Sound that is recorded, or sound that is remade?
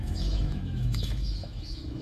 remade